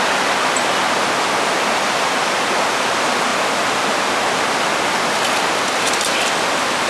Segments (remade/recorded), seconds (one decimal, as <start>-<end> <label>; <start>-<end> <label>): 0.0-6.9 recorded